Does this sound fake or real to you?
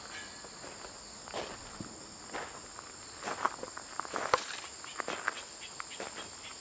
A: real